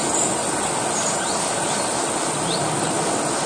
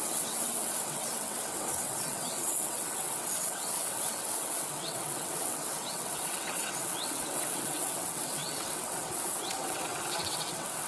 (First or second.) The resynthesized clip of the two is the second